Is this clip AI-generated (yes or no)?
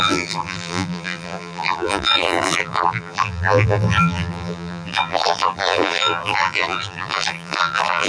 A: yes